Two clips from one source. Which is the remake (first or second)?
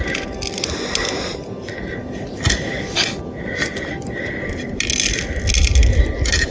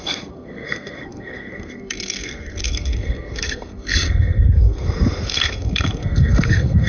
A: second